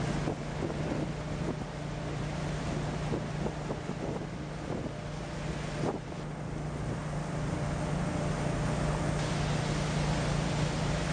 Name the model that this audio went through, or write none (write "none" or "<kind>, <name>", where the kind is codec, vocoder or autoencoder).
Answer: none